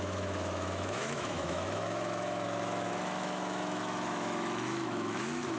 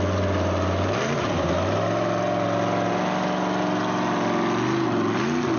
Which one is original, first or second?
second